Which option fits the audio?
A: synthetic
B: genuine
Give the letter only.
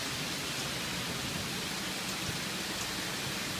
B